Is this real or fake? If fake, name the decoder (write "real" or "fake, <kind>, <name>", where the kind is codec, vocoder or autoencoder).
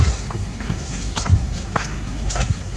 fake, codec, SNAC